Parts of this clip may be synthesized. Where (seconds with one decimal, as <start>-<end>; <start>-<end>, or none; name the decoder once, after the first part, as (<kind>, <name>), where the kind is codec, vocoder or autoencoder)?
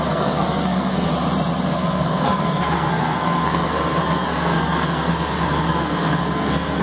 0.0-1.1 (codec, SNAC); 1.7-6.8